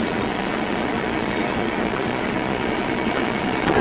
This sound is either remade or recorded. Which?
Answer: remade